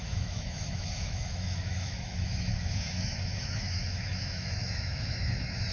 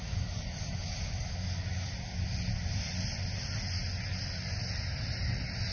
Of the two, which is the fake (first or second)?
first